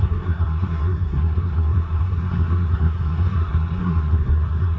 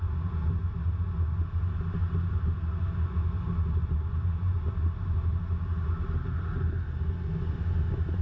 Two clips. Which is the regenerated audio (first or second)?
first